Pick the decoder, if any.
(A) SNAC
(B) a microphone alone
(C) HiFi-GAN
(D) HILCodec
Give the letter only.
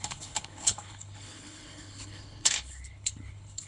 D